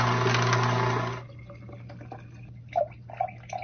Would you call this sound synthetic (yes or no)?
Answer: no